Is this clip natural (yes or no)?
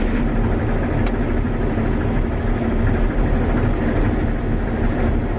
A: yes